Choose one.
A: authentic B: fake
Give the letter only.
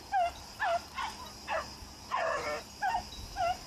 A